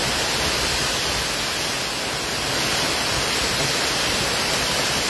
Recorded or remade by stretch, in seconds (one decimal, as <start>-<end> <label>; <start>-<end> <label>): 0.0-5.1 recorded